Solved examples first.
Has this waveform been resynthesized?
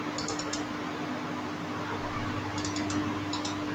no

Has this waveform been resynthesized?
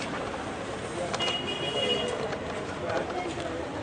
yes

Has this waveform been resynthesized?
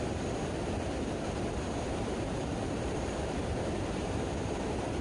yes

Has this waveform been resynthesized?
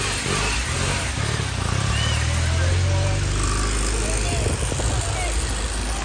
no